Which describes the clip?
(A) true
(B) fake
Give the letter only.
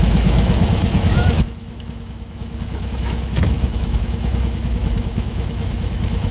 B